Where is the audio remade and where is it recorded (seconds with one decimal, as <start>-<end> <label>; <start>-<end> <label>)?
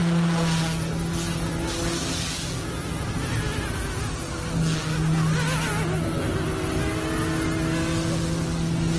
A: 0.0-9.0 recorded